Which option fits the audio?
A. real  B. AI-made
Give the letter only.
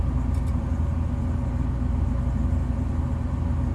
A